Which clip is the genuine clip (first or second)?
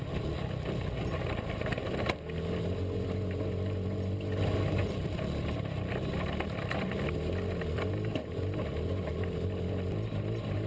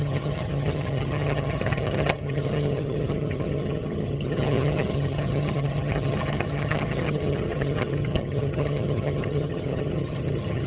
first